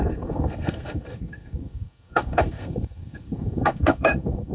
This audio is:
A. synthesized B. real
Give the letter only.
A